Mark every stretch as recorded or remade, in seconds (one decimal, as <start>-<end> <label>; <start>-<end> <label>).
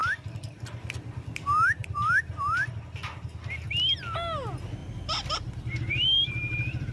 0.0-0.6 remade; 0.6-1.8 recorded; 1.8-2.7 remade; 2.7-4.8 recorded; 4.8-6.9 remade